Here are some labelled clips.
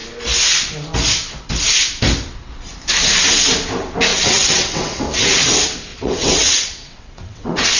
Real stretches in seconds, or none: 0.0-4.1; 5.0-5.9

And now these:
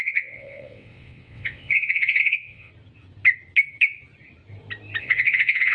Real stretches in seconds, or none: 2.7-5.0

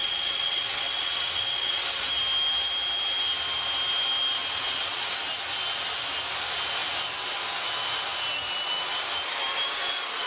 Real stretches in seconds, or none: 2.1-4.4; 5.1-10.3

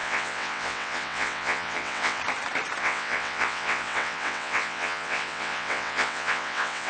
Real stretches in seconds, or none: 2.2-2.8

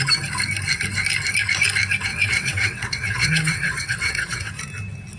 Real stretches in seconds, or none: 0.0-2.1; 4.5-5.2

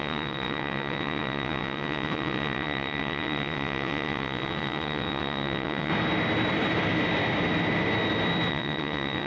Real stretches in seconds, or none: 5.9-8.5